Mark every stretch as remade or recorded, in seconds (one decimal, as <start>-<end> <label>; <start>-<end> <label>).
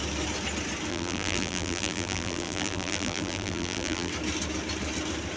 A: 0.0-0.9 recorded; 0.9-4.1 remade; 4.1-5.4 recorded